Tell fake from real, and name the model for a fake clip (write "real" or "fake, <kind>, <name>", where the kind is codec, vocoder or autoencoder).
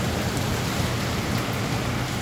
real